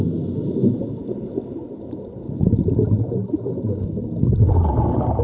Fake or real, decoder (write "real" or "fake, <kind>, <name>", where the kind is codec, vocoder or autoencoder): real